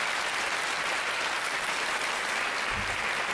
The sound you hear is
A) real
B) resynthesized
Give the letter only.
A